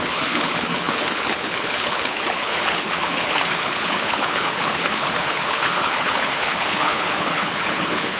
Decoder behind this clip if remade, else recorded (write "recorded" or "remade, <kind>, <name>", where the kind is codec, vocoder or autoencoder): remade, codec, HILCodec